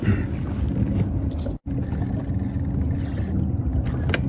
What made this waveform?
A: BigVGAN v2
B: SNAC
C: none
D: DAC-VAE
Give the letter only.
C